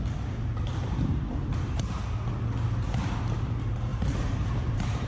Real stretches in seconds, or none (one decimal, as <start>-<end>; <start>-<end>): 0.0-0.7; 2.3-3.9